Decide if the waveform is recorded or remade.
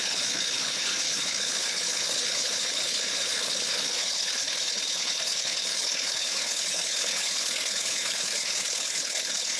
remade